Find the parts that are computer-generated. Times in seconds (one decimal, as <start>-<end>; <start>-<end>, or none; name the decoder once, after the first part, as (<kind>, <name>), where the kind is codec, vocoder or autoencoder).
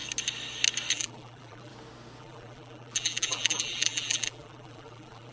0.9-1.7 (vocoder, BigVGAN v2); 2.2-5.3